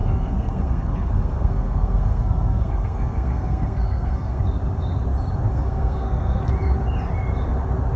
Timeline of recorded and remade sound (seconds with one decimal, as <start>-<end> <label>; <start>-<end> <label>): 0.0-4.4 remade; 4.4-5.5 recorded; 5.5-6.4 remade; 6.4-8.0 recorded

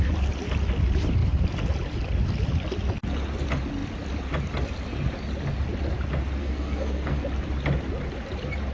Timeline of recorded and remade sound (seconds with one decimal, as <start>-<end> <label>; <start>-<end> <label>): 0.0-6.4 recorded; 6.4-7.3 remade; 7.3-8.7 recorded